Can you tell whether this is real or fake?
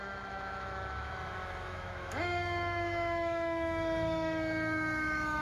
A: fake